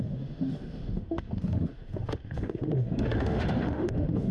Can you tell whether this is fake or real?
fake